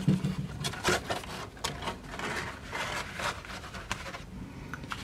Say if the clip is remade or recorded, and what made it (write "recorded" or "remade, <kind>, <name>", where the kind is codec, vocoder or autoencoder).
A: recorded